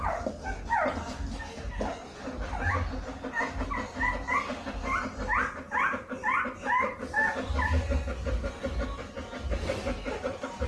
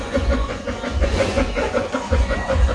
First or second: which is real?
first